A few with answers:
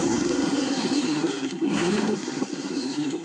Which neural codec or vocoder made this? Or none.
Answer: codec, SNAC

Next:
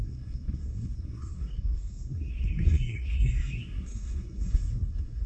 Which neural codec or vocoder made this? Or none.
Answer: codec, SNAC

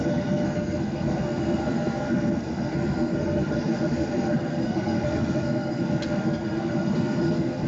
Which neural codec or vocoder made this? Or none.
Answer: codec, SNAC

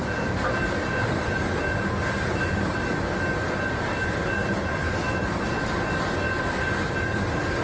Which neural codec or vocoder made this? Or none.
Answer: none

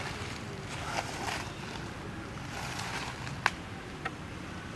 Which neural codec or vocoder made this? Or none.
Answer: none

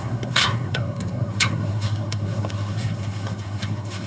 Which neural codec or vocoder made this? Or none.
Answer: codec, SNAC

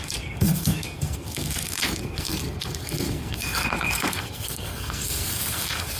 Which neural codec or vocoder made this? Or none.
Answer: codec, SNAC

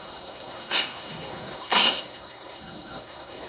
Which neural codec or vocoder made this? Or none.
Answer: codec, SNAC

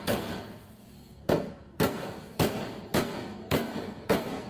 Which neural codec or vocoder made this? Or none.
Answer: codec, SNAC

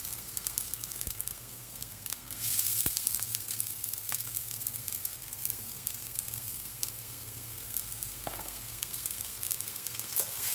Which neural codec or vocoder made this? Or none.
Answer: codec, SNAC